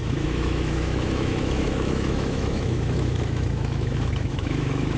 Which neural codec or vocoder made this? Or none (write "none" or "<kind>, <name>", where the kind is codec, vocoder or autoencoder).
autoencoder, DAC-VAE